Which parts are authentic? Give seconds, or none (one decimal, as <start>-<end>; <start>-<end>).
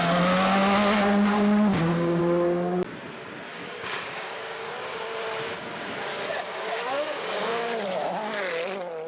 0.0-1.7; 2.2-3.5; 4.7-6.1; 7.6-9.1